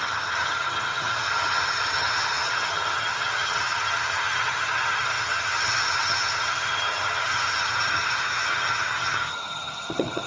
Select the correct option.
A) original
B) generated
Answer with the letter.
B